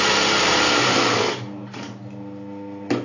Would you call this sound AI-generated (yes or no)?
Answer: no